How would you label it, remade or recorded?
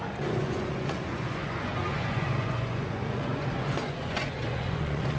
remade